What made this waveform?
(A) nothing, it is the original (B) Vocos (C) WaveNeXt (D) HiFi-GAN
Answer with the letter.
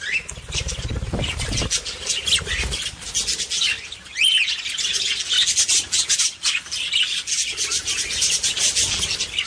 A